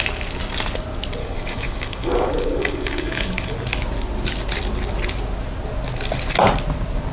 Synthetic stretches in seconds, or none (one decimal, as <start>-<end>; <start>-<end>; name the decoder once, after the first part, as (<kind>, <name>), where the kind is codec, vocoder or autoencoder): 1.2-3.5 (codec, DAC)